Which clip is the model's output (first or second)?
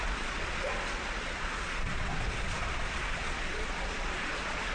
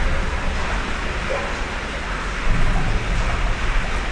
first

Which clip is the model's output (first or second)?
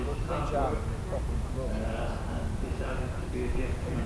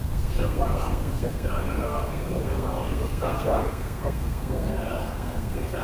second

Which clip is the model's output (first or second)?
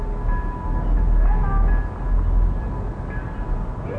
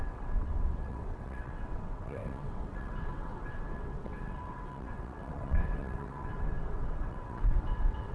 second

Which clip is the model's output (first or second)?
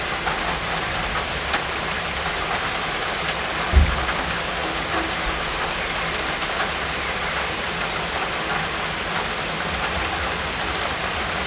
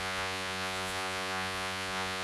second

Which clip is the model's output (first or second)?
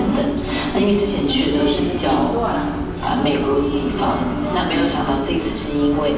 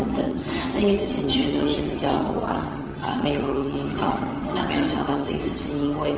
second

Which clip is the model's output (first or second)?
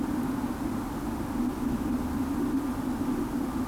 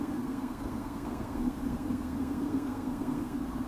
second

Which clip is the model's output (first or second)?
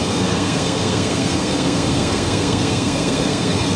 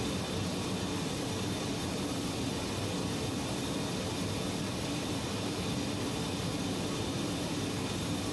first